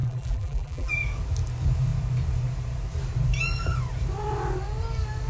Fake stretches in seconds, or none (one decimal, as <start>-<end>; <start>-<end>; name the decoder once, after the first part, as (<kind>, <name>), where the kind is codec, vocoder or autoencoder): 0.0-0.9 (vocoder, BigVGAN v2)